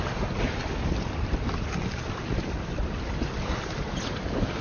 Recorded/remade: recorded